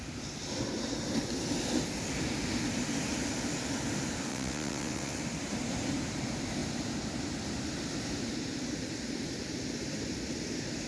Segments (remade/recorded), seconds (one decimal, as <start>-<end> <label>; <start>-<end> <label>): 0.0-4.3 recorded; 4.3-5.2 remade; 5.2-10.9 recorded